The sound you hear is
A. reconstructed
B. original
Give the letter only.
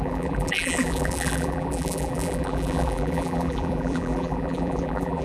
A